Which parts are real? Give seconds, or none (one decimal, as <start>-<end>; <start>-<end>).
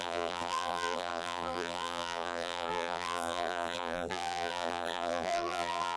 none